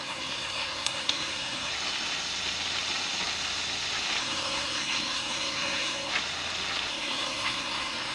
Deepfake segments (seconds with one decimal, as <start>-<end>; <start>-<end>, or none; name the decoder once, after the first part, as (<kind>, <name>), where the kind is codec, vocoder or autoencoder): 0.0-1.7 (codec, SNAC); 4.2-6.1; 6.9-8.1